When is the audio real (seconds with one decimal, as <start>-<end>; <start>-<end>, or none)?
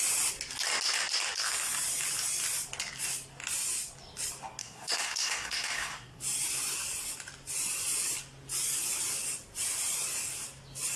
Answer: 0.0-4.6; 6.2-11.0